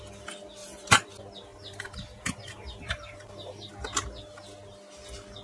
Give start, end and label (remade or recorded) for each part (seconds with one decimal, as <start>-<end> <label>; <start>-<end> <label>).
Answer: 0.0-0.6 recorded; 0.6-1.1 remade; 1.1-1.5 recorded; 1.5-3.7 remade; 3.7-5.4 recorded